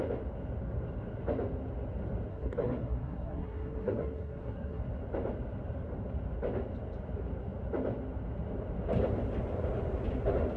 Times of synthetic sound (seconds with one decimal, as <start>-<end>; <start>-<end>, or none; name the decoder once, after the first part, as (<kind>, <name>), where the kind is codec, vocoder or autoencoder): 2.3-4.8 (codec, SNAC)